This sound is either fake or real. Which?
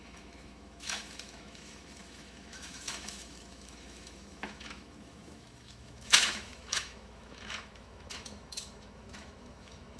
fake